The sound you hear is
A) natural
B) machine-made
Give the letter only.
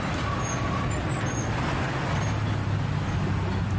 A